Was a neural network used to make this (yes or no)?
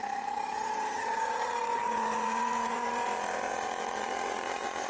yes